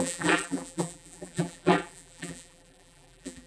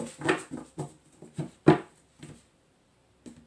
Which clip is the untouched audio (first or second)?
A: second